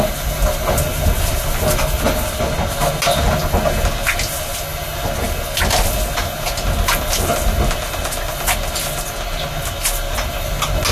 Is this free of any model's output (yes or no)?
yes